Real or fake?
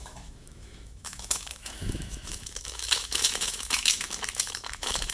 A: fake